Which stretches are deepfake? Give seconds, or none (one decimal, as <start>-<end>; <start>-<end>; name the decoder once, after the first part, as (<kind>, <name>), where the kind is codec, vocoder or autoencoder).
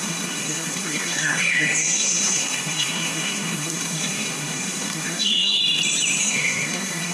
0.0-5.6 (codec, SNAC); 6.2-7.1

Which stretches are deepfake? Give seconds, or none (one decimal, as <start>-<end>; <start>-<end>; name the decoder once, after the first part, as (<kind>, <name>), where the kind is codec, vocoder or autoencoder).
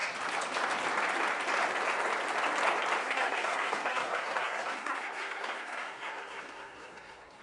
3.0-7.4 (codec, SNAC)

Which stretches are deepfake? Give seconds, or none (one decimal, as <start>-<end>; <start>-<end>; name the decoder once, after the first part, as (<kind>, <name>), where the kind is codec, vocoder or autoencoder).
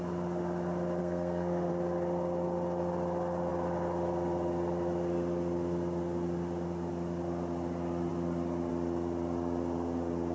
1.0-1.7 (codec, SNAC)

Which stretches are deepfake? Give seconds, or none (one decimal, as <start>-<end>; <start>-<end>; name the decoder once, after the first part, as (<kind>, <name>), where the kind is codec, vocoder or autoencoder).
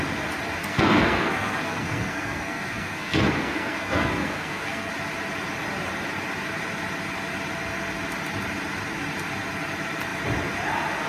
0.6-4.9 (codec, SNAC)